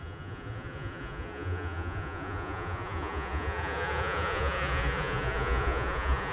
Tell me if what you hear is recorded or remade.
remade